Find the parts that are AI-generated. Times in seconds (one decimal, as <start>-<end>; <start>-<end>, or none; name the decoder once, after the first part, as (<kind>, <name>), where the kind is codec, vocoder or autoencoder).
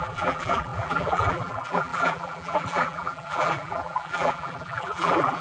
0.0-5.4 (vocoder, BigVGAN v2)